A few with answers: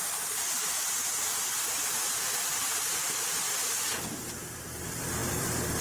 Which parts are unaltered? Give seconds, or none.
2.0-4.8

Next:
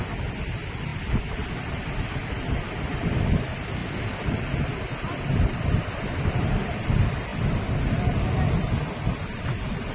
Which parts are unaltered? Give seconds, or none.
0.9-2.5; 3.8-4.3; 7.3-9.4

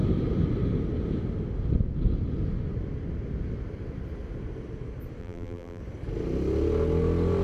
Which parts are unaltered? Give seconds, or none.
0.0-5.2; 5.8-7.4

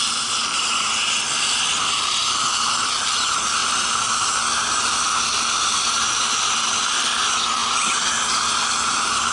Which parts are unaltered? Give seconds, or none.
0.0-7.6; 8.1-9.3

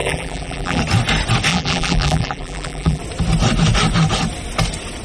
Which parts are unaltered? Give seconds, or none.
0.8-1.5; 3.0-5.0